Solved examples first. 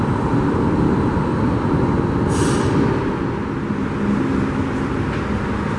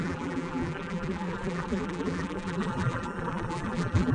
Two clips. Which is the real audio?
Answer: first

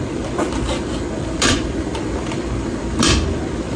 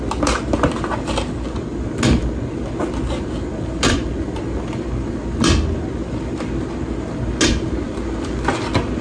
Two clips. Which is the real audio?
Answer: second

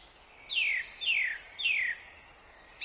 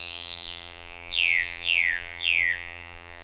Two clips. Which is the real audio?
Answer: first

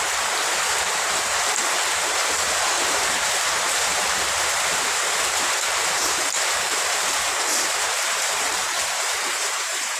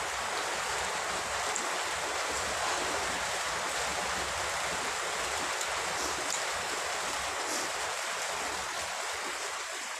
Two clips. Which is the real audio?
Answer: second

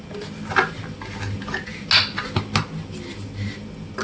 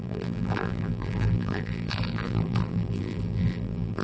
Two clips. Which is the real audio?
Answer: first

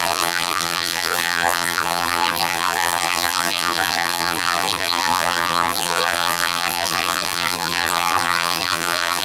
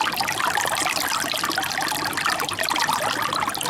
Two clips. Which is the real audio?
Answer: second